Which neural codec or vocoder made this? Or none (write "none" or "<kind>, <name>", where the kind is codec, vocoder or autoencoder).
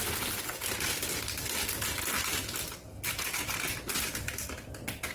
none